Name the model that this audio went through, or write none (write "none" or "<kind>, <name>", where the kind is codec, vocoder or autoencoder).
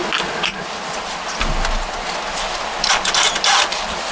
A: none